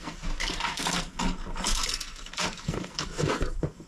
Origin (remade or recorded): remade